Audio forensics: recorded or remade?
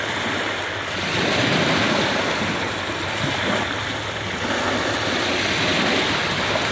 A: recorded